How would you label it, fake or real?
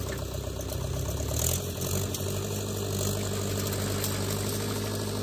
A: real